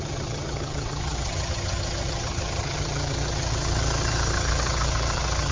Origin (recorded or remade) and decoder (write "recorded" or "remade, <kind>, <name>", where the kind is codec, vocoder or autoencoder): remade, vocoder, HiFi-GAN